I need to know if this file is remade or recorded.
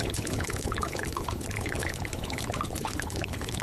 remade